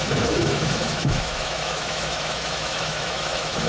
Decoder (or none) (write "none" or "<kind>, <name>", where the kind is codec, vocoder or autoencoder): autoencoder, DAC-VAE